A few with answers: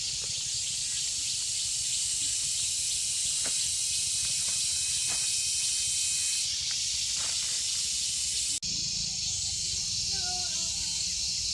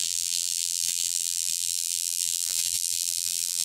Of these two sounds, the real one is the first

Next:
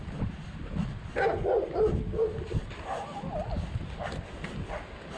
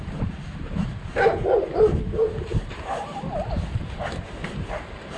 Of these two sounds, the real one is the first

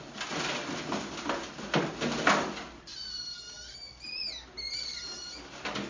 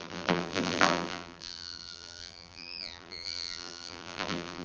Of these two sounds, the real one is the first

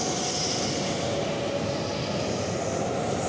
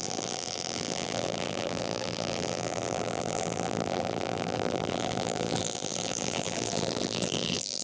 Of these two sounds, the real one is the first